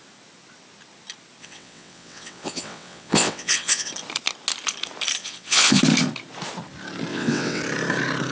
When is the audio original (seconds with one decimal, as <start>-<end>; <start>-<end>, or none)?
0.0-1.4; 3.9-5.2; 5.8-7.1; 7.6-8.3